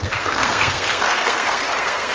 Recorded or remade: remade